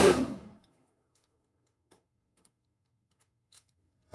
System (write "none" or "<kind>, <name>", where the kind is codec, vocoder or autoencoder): codec, SNAC